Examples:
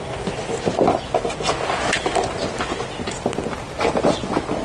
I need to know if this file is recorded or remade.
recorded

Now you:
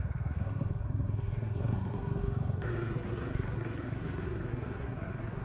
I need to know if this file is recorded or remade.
remade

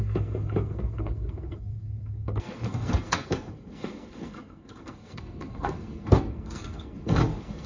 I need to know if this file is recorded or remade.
remade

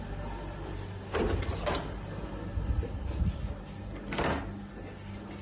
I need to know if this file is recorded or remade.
recorded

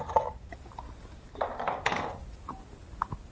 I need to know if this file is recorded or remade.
recorded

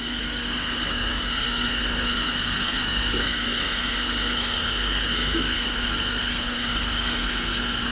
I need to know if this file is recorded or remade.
remade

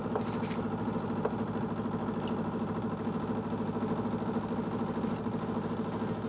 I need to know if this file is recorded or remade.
recorded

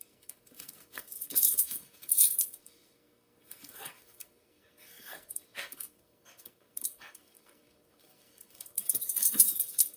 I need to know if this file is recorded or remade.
remade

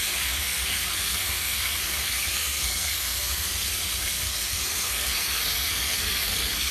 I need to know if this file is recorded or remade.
remade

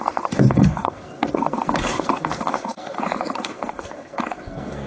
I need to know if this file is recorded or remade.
remade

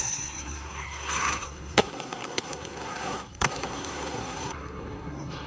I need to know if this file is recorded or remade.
remade